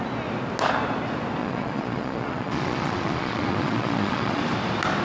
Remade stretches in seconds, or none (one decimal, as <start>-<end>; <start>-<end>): 1.4-4.4